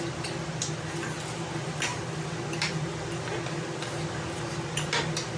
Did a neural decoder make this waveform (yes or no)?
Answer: no